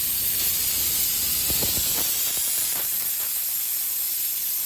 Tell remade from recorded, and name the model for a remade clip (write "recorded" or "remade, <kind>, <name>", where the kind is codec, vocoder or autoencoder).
remade, vocoder, BigVGAN v2